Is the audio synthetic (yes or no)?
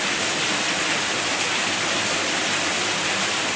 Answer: no